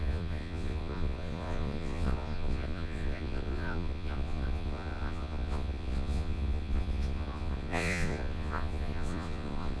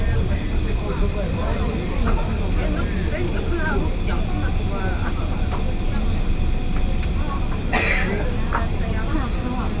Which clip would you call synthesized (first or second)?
first